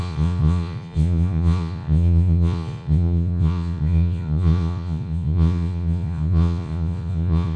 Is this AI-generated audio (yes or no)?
yes